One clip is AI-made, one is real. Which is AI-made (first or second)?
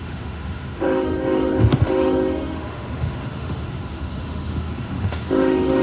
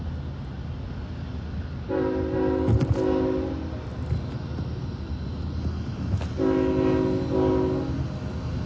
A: first